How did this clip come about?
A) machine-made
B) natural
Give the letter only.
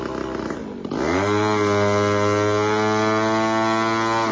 B